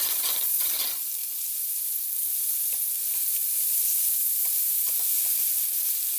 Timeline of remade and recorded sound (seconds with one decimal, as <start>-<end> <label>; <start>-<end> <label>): 0.0-5.4 remade; 5.4-6.2 recorded